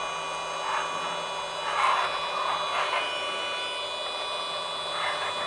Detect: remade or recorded recorded